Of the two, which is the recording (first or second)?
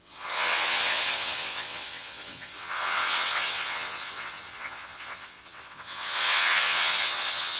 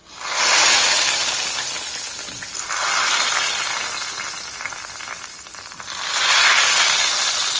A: second